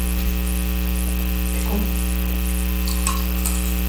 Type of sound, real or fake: real